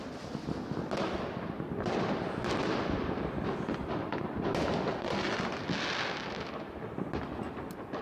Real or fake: real